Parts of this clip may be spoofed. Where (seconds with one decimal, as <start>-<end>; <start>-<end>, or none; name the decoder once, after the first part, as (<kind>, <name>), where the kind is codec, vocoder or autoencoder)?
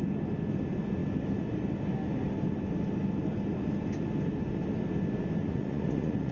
5.4-6.3 (vocoder, Vocos)